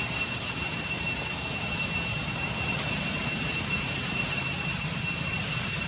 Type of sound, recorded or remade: remade